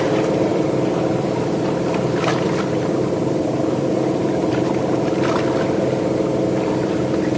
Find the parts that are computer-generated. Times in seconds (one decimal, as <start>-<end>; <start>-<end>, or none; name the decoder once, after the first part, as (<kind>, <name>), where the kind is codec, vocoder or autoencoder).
0.5-4.8 (vocoder, BigVGAN v2)